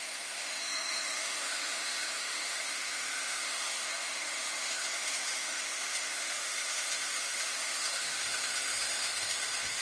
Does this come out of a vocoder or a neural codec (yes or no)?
yes